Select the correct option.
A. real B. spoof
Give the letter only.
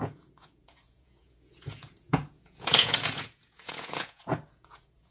B